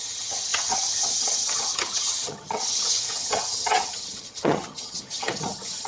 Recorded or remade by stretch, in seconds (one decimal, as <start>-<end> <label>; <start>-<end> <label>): 0.0-5.9 remade